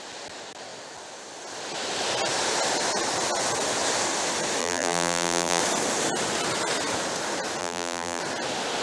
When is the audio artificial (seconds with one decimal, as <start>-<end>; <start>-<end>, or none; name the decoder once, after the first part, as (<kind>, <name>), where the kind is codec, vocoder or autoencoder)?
4.6-5.6 (vocoder, BigVGAN v2); 7.6-8.2